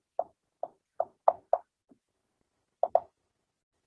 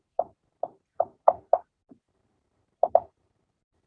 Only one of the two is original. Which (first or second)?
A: first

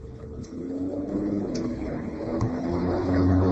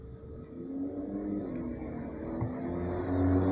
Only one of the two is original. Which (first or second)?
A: second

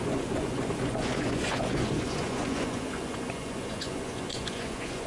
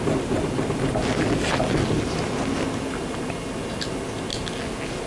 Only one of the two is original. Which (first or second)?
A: second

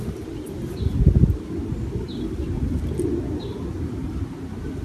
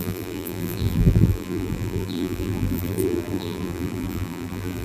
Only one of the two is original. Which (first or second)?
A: first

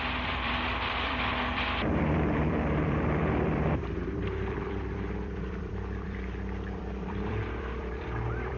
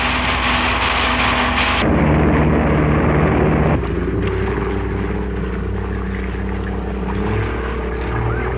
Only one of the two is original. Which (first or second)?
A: second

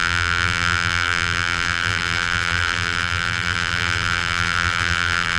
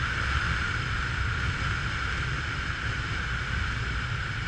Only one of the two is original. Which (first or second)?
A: second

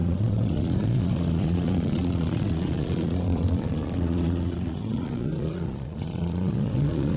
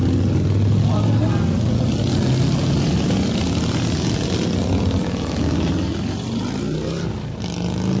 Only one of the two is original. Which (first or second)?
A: second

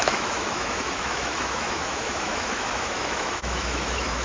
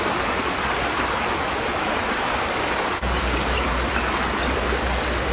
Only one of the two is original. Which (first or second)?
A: second